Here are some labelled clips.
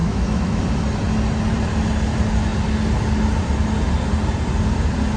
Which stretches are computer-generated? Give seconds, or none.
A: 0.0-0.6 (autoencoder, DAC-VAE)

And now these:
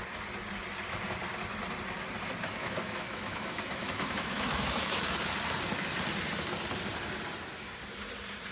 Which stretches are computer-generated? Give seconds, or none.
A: 2.6-5.0 (autoencoder, DAC-VAE)

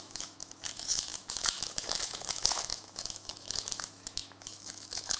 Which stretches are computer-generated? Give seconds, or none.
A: 0.0-5.2 (autoencoder, DAC-VAE)

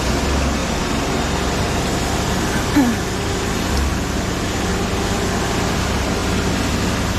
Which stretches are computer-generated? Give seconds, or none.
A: none

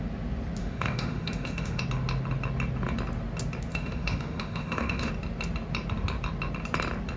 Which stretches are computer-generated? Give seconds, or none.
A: 0.6-1.8 (autoencoder, DAC-VAE); 3.7-5.1